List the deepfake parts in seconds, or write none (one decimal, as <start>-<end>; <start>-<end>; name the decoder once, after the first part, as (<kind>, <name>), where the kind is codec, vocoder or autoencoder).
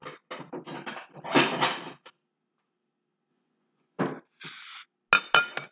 3.3-4.0 (vocoder, Vocos)